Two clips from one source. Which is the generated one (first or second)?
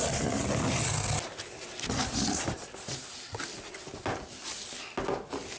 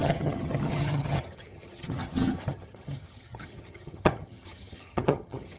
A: second